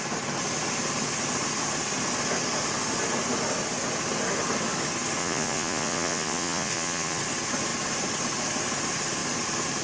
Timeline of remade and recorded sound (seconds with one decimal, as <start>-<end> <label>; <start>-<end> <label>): 0.0-5.2 recorded; 5.2-7.2 remade; 7.2-9.8 recorded